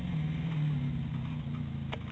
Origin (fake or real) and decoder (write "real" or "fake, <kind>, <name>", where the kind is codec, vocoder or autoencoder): real